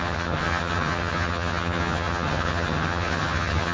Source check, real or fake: fake